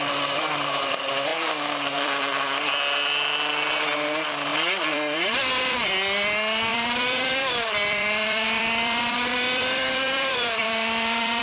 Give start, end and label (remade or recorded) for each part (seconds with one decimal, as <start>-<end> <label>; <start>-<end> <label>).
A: 0.0-1.3 recorded; 1.3-2.3 remade; 2.3-4.5 recorded; 4.5-5.9 remade; 5.9-6.7 recorded; 6.7-11.4 remade